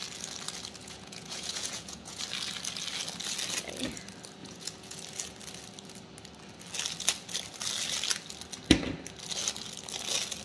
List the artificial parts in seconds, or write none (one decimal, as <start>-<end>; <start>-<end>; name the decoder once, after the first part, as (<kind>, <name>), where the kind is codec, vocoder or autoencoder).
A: 0.8-2.2 (vocoder, Vocos); 4.4-5.0